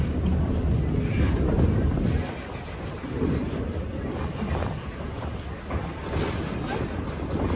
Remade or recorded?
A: recorded